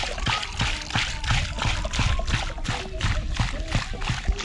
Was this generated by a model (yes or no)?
no